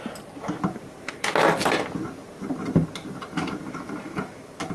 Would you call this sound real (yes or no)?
yes